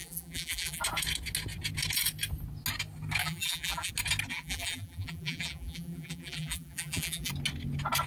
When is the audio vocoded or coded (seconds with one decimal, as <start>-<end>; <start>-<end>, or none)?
0.0-0.8; 3.2-3.9; 4.3-7.3